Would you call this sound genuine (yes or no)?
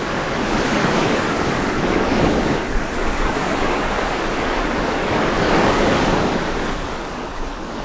no